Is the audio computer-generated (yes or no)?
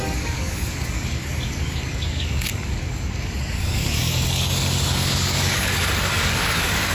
yes